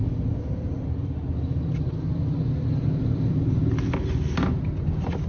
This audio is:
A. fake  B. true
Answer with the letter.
B